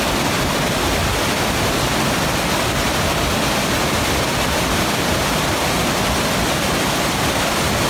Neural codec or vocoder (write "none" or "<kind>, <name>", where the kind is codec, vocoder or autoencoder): none